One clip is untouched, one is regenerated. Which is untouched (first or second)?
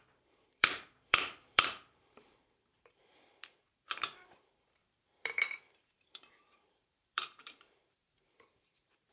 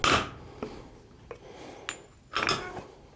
second